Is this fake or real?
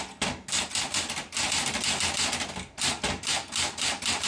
real